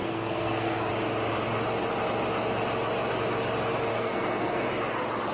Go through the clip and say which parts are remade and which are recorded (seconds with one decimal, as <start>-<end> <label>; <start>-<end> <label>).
0.0-0.9 remade; 0.9-3.9 recorded; 3.9-4.7 remade; 4.7-5.3 recorded